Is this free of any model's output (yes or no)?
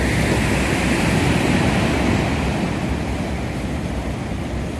yes